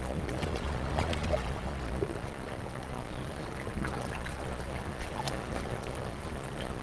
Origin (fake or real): fake